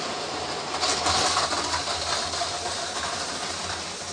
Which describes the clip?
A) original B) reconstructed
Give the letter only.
A